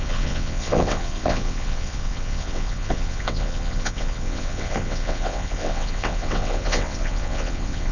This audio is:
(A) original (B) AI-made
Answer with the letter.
B